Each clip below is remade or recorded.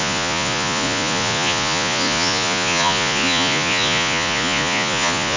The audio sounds remade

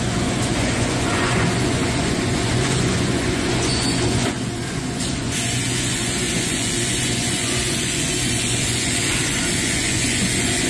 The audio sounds remade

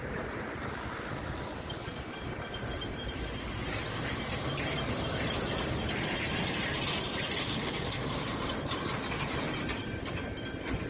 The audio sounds recorded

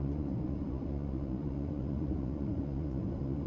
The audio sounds remade